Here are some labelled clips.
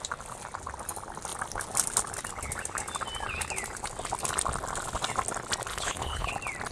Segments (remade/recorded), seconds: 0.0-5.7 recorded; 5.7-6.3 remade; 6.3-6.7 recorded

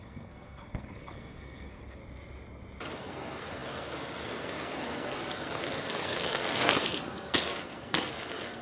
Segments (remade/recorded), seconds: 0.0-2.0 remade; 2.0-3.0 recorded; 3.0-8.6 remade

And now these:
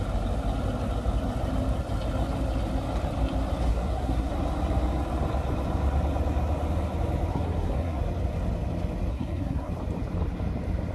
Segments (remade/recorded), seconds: 0.0-3.7 recorded; 3.7-4.3 remade; 4.3-7.3 recorded; 7.3-8.0 remade; 8.0-9.1 recorded; 9.1-9.7 remade; 9.7-10.9 recorded

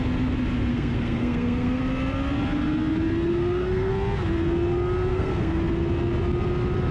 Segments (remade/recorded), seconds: 0.0-0.7 recorded; 0.7-1.8 remade; 1.8-3.3 recorded; 3.3-3.9 remade; 3.9-5.1 recorded; 5.1-5.6 remade; 5.6-6.9 recorded

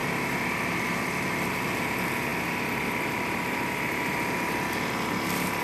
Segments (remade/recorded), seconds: 0.0-5.6 recorded

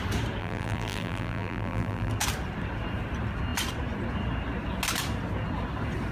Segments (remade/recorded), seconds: 0.0-0.4 recorded; 0.4-2.1 remade; 2.1-6.1 recorded

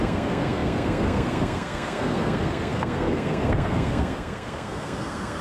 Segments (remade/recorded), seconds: 0.0-5.4 remade